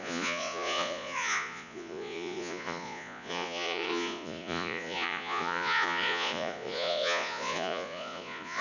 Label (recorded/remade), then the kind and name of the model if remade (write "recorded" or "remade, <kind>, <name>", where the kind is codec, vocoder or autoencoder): remade, vocoder, Vocos